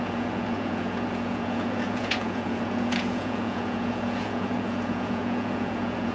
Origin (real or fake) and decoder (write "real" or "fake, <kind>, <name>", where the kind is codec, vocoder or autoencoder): fake, vocoder, Vocos